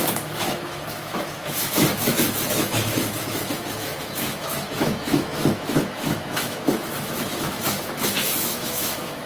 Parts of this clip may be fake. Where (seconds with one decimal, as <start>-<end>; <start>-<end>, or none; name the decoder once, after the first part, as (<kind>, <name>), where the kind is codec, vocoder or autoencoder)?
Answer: 0.0-9.3 (autoencoder, DAC-VAE)